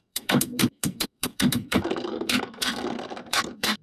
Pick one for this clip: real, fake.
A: fake